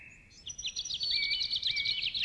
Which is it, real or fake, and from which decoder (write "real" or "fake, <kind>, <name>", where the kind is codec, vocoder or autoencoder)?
real